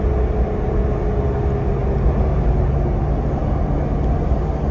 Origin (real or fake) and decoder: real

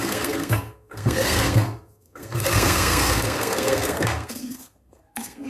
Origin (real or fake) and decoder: fake, codec, SNAC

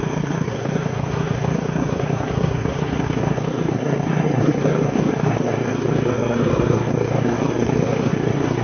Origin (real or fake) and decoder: fake, codec, SNAC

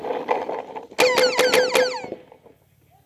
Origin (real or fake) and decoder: real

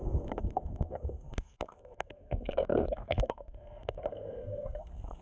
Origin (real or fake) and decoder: fake, codec, SNAC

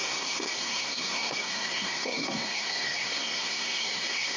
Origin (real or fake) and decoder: fake, codec, SNAC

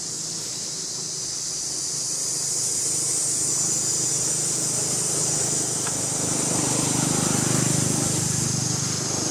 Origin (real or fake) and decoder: real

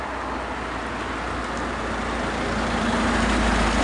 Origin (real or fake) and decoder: real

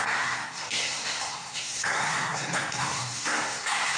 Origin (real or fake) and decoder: fake, codec, SNAC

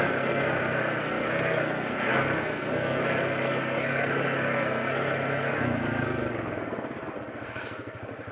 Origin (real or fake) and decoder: fake, codec, SNAC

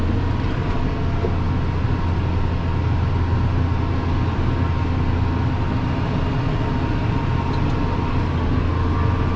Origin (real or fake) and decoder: real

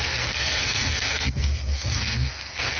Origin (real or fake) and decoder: fake, codec, SNAC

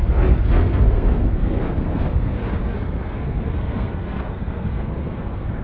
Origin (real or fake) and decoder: fake, codec, SNAC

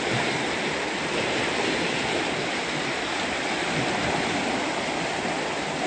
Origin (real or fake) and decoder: real